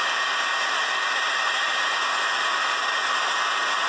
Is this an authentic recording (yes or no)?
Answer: yes